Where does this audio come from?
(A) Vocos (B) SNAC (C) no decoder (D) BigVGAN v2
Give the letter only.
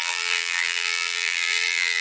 D